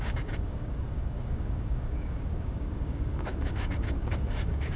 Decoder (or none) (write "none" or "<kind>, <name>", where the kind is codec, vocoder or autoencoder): codec, DAC